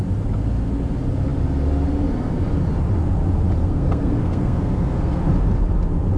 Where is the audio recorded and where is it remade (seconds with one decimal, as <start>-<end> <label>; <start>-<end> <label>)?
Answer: 0.0-3.6 recorded; 3.6-5.2 remade; 5.2-6.2 recorded